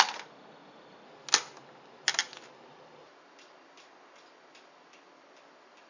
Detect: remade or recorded recorded